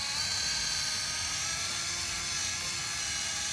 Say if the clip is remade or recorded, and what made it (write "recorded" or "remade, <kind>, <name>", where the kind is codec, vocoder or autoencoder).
recorded